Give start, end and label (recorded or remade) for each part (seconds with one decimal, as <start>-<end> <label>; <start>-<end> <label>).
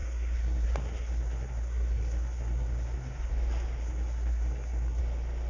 0.0-3.3 remade; 3.3-3.8 recorded; 3.8-5.0 remade; 5.0-5.5 recorded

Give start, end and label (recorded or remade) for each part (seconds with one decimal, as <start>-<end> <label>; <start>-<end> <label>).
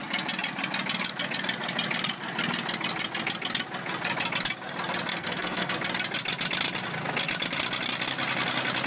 0.0-5.1 recorded; 5.1-5.7 remade; 5.7-8.9 recorded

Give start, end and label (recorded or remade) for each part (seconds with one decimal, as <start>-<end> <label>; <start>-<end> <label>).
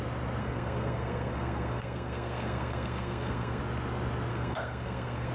0.0-0.4 recorded; 0.4-3.6 remade; 3.6-4.3 recorded; 4.3-5.3 remade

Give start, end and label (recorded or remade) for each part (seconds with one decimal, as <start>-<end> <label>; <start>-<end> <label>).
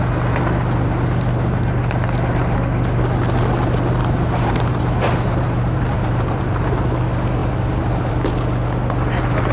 0.0-4.0 recorded; 4.0-6.9 remade; 6.9-7.4 recorded; 7.4-8.1 remade; 8.1-9.5 recorded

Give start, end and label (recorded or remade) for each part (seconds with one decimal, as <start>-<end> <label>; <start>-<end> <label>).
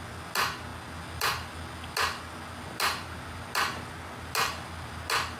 0.0-5.4 recorded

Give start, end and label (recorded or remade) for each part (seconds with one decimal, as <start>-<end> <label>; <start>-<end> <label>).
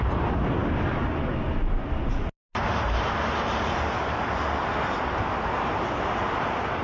0.0-6.8 recorded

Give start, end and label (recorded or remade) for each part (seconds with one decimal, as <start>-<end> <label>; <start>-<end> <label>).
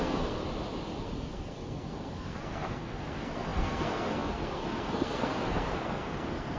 0.0-0.4 remade; 0.4-1.0 recorded; 1.0-6.6 remade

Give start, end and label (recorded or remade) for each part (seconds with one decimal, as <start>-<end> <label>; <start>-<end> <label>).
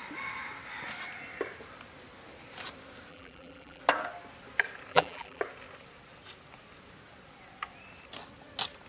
0.0-3.1 recorded; 3.1-3.8 remade; 3.8-4.9 recorded; 4.9-5.4 remade; 5.4-8.9 recorded